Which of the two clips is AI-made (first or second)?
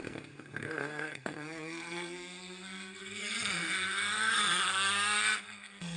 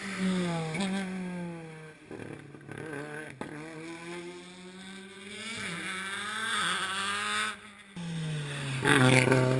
first